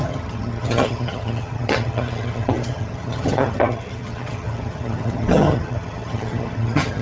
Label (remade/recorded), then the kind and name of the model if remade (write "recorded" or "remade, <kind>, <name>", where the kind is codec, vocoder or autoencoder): remade, vocoder, HiFi-GAN